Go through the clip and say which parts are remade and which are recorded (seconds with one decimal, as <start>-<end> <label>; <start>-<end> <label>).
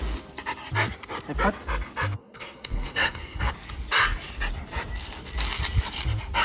0.0-2.2 recorded; 2.2-3.5 remade; 3.5-6.4 recorded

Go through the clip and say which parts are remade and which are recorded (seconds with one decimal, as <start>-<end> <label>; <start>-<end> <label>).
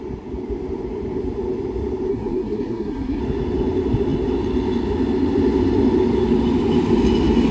0.0-2.1 recorded; 2.1-3.2 remade; 3.2-7.5 recorded